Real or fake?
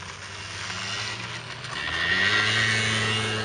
real